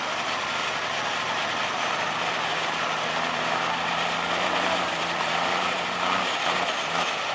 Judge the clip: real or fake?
fake